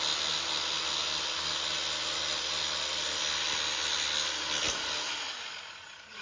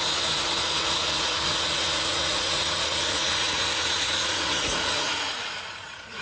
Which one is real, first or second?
first